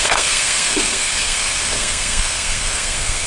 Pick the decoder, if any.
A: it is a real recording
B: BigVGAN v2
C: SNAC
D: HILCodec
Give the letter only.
C